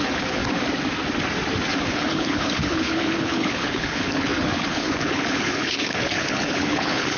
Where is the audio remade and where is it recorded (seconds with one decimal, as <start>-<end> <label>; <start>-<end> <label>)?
0.0-0.4 remade; 0.4-1.8 recorded; 1.8-7.2 remade